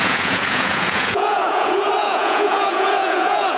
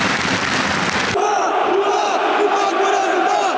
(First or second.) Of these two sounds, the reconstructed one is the first